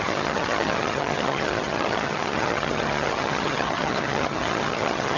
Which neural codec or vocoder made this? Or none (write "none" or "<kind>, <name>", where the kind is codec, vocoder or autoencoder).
vocoder, HiFi-GAN